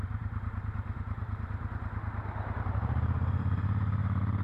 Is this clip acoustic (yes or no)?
no